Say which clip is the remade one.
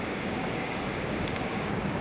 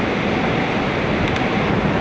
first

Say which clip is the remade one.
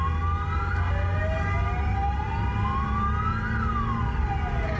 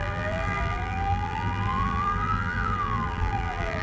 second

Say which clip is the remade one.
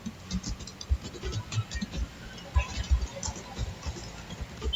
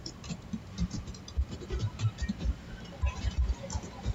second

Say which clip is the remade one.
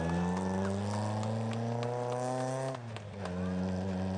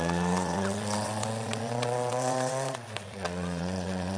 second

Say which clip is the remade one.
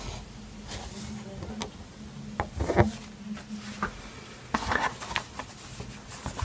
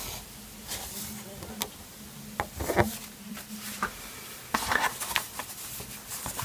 second